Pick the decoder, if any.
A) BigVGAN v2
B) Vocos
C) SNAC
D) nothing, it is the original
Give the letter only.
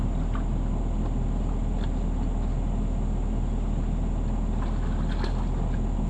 D